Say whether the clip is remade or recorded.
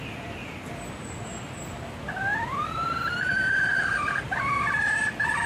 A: recorded